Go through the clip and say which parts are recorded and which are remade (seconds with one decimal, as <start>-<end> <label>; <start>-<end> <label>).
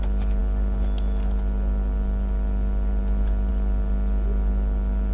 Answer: 0.0-5.1 recorded